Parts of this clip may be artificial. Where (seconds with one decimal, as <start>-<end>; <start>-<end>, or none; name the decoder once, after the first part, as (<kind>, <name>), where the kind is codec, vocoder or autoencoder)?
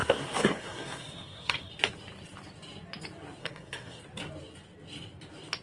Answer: 0.0-1.7 (codec, SNAC); 3.4-4.0